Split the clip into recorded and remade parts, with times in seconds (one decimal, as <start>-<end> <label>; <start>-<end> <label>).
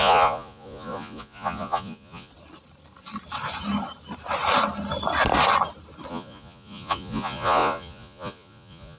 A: 0.0-2.3 remade; 2.3-6.1 recorded; 6.1-9.0 remade